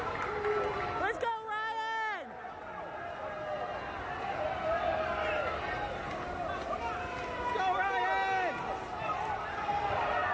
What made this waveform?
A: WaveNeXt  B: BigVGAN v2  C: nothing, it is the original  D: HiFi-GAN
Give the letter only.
C